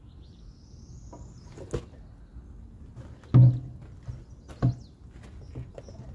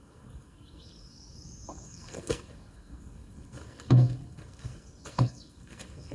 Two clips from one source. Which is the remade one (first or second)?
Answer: second